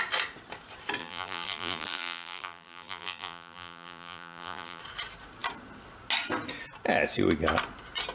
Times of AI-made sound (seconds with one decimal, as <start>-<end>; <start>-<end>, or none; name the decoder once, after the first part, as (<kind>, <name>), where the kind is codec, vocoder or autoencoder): 1.0-4.8 (vocoder, BigVGAN v2)